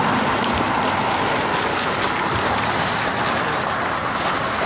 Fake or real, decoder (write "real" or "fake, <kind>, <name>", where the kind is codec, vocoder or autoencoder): real